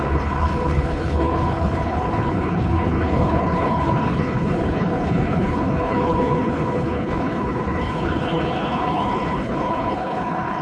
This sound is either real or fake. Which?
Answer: fake